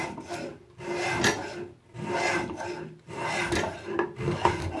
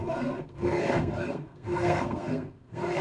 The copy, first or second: second